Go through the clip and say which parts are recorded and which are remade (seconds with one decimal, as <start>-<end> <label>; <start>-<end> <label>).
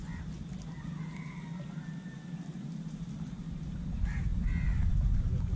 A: 0.0-5.6 recorded